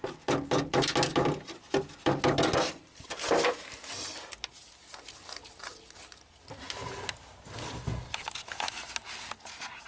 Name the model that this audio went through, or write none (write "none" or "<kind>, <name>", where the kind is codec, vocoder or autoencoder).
none